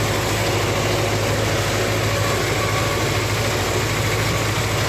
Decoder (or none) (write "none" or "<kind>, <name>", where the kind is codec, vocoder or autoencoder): none